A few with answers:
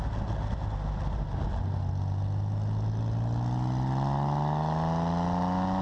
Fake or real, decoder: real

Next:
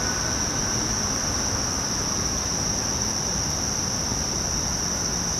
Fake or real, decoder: real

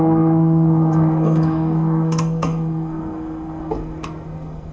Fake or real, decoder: fake, codec, SNAC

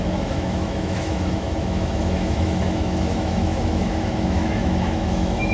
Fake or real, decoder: fake, autoencoder, DAC-VAE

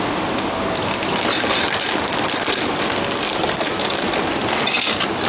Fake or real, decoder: real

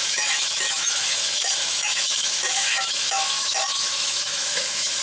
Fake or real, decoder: fake, autoencoder, DAC-VAE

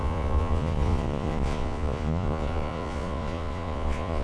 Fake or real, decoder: fake, vocoder, Vocos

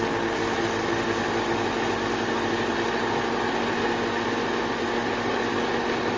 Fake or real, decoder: real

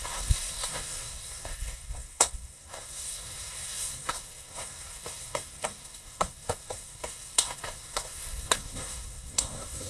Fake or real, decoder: fake, codec, SNAC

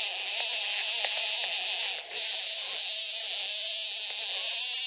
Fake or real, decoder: real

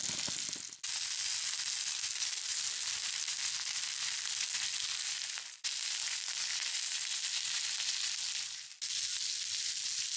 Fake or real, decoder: real